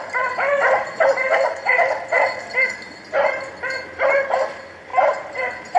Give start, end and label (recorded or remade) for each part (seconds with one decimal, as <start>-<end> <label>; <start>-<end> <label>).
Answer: 0.0-5.8 recorded